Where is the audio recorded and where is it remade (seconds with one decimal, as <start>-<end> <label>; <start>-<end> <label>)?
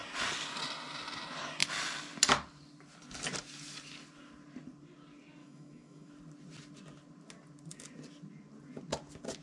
0.0-5.4 recorded; 5.4-6.1 remade; 6.1-9.4 recorded